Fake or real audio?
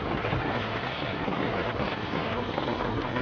fake